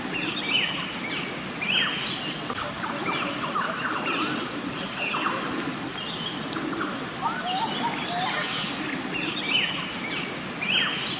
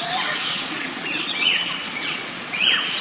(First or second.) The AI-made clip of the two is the second